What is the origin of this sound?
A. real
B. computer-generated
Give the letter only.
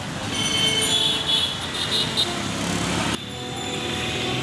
A